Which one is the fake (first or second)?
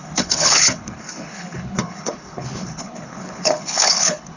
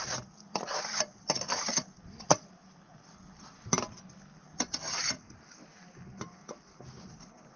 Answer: first